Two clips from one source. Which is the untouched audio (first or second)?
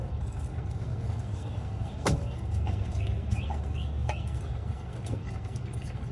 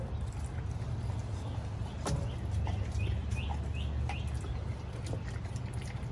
second